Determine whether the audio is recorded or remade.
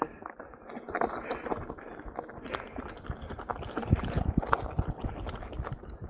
recorded